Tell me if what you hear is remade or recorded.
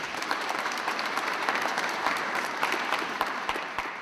remade